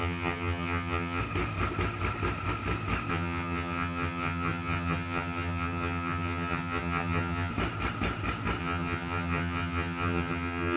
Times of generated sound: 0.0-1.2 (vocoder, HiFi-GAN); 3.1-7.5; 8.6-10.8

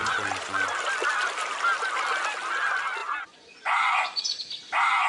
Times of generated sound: 0.0-0.7 (vocoder, Vocos); 3.0-4.4

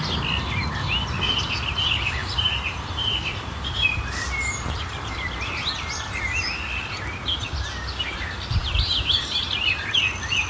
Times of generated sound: 2.2-5.0 (vocoder, BigVGAN v2); 8.6-10.0

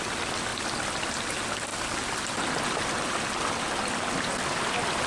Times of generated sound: none

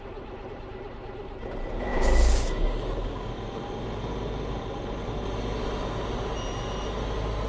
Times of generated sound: 1.9-3.3 (codec, DAC)

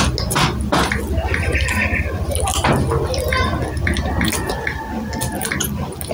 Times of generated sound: none